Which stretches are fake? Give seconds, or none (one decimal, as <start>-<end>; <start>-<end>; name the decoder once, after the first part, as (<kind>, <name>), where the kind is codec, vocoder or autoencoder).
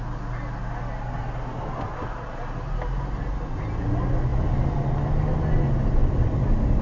4.3-4.8 (vocoder, BigVGAN v2); 6.0-6.8